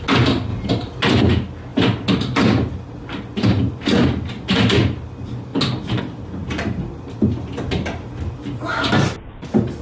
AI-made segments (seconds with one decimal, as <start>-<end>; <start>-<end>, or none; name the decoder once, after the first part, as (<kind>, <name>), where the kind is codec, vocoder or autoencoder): 0.5-1.1 (vocoder, BigVGAN v2); 1.7-3.6; 5.5-6.0; 6.4-7.6